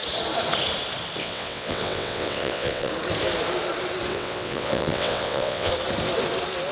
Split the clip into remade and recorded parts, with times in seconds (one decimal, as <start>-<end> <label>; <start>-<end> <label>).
0.0-1.2 recorded; 1.2-2.9 remade; 2.9-4.1 recorded; 4.1-5.7 remade; 5.7-6.7 recorded